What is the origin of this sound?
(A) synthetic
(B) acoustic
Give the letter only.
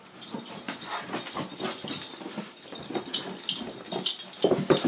B